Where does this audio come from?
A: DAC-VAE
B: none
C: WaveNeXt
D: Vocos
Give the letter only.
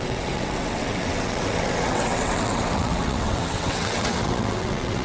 C